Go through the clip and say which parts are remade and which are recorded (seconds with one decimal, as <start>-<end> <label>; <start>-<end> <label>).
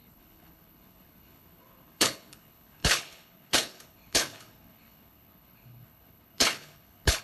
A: 0.0-7.2 remade